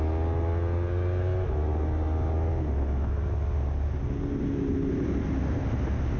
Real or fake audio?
real